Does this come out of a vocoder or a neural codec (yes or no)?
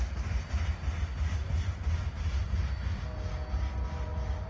no